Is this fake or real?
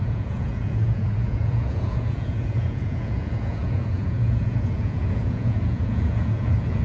fake